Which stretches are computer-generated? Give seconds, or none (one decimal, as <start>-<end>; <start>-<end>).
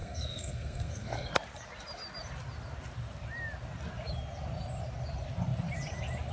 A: 0.0-1.3